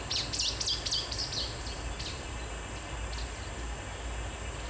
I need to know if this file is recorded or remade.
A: recorded